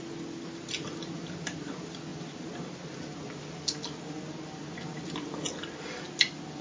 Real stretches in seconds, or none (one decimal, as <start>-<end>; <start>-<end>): 0.0-6.6